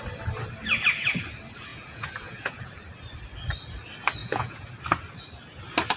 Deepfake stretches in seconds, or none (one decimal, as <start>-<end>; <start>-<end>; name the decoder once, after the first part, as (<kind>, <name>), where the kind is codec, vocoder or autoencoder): 1.7-2.6 (vocoder, Vocos); 4.2-4.7